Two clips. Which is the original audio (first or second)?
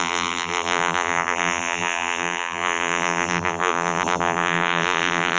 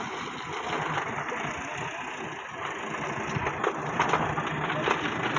second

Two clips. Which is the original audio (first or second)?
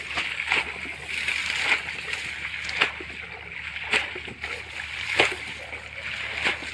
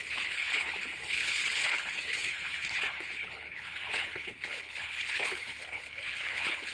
first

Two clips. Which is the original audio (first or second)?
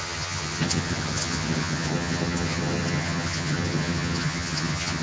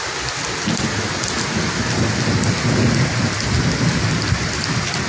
second